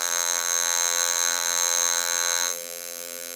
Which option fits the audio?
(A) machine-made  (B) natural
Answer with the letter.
A